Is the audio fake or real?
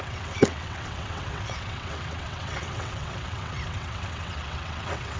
fake